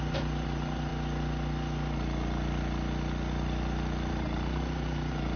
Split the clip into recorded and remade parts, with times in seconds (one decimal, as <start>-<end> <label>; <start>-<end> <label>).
0.0-0.9 remade; 0.9-4.1 recorded; 4.1-5.4 remade